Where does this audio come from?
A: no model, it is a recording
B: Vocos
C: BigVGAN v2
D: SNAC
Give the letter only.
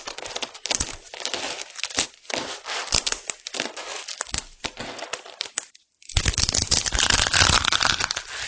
A